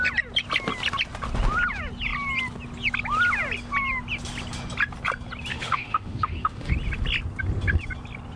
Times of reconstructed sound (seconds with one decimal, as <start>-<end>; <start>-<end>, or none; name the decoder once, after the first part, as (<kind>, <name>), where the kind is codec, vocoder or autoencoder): 5.5-6.7 (autoencoder, DAC-VAE)